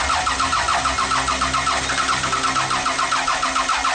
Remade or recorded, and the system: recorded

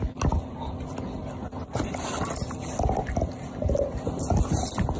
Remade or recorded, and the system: recorded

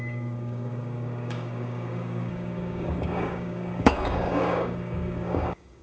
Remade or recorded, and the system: remade, codec, DAC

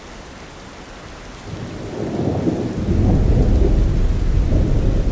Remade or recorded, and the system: recorded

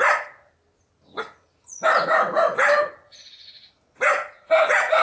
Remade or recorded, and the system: recorded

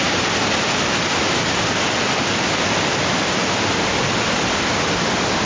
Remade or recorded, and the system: recorded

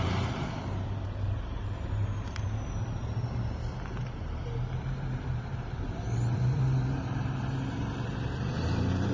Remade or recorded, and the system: remade, vocoder, BigVGAN v2